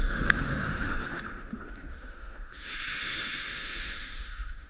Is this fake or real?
fake